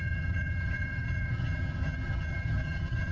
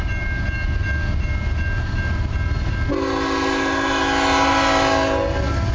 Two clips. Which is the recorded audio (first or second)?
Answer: second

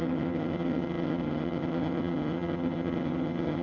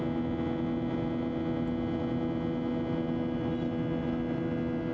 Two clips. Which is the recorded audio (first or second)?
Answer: second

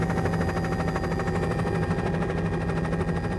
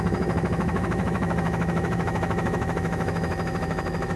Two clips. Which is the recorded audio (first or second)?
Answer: first